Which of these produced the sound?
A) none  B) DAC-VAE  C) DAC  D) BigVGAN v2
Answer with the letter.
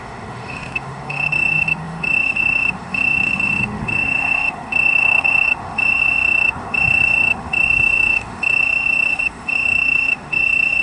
B